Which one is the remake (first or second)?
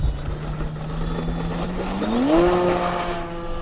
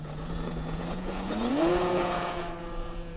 second